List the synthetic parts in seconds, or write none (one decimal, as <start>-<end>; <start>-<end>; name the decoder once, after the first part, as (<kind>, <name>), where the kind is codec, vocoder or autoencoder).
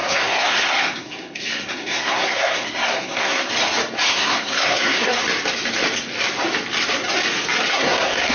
0.0-3.5 (codec, SNAC); 4.1-5.2; 7.7-8.3